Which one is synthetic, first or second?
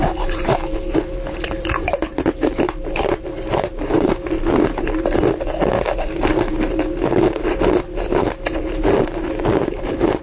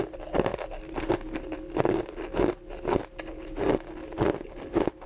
first